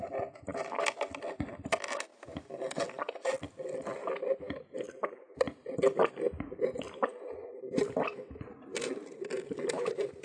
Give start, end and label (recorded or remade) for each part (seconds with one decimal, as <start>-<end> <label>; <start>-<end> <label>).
0.0-3.9 remade; 3.9-8.8 recorded; 8.8-10.2 remade